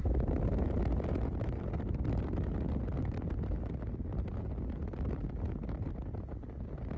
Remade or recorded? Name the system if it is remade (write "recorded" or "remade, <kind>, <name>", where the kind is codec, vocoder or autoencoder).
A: recorded